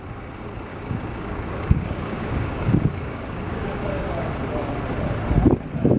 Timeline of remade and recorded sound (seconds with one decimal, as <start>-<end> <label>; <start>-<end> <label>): 0.0-0.7 recorded; 0.7-4.3 remade; 4.3-6.0 recorded